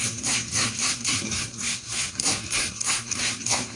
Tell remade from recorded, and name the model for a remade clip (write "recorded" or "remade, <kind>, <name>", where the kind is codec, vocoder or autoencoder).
remade, codec, SNAC